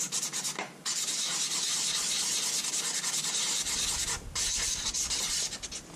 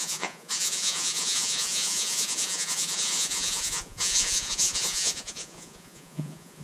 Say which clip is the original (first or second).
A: first